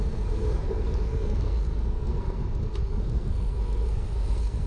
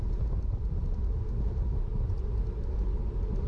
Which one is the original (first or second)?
second